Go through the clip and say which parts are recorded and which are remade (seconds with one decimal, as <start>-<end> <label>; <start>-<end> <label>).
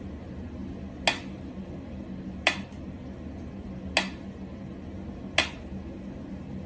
0.0-6.7 recorded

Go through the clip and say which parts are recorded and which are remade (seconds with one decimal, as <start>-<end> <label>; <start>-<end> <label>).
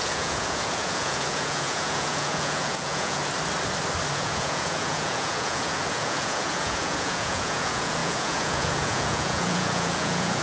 0.0-3.2 remade; 3.2-4.1 recorded; 4.1-10.4 remade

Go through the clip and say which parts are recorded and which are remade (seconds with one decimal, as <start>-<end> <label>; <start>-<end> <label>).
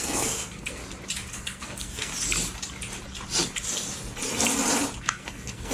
0.0-0.8 remade; 0.8-1.3 recorded; 1.3-2.1 remade; 2.1-5.0 recorded; 5.0-5.7 remade